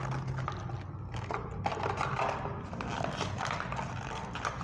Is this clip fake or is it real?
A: real